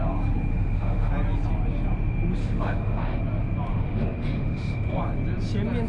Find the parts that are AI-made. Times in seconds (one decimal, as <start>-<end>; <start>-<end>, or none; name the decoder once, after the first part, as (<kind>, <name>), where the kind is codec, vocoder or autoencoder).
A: 0.5-1.1 (autoencoder, DAC-VAE); 2.4-3.2; 3.7-5.0